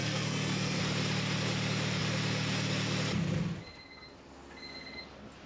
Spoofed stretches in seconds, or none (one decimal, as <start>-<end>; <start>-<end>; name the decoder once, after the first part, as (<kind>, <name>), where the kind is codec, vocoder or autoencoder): 0.0-0.8 (codec, SNAC)